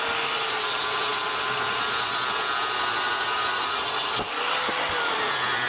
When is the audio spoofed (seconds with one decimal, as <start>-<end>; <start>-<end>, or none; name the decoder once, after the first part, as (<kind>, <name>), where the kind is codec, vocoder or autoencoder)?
none